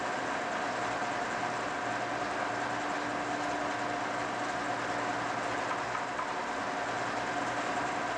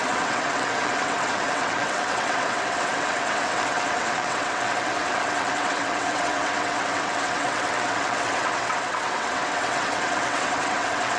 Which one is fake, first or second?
second